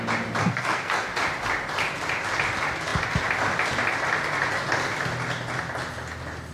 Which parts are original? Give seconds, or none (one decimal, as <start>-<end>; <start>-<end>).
0.0-0.4; 1.1-6.5